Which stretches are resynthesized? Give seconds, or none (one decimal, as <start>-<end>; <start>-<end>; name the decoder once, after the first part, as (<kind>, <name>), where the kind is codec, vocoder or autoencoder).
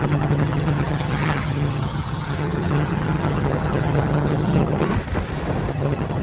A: 0.0-4.9 (vocoder, HiFi-GAN); 5.7-6.2